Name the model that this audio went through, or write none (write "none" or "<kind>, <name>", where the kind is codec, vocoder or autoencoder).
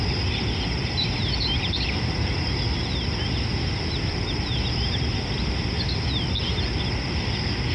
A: none